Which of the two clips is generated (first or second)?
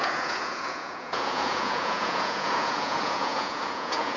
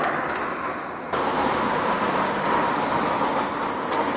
first